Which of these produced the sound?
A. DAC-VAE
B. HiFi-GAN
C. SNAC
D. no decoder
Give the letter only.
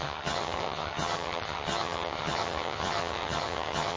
B